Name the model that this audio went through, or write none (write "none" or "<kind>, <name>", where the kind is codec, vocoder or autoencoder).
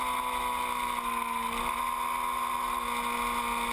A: none